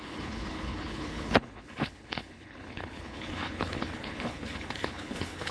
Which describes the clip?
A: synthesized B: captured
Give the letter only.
A